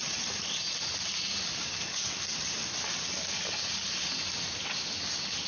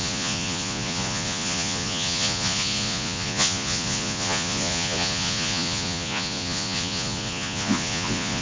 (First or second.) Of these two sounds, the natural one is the first